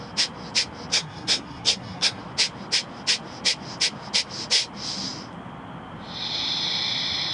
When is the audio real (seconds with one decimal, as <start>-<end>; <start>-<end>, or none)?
0.0-0.9; 2.2-7.3